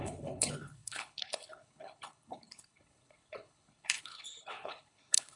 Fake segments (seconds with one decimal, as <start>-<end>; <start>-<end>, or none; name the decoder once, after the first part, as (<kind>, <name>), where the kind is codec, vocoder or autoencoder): 0.0-5.4 (codec, HILCodec)